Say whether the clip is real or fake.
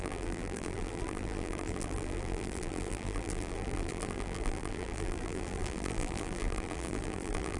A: fake